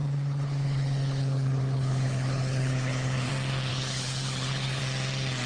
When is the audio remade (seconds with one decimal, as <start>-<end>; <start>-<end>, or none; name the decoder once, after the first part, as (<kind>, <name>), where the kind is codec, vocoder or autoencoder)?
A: 0.0-3.3 (codec, HILCodec); 3.7-4.8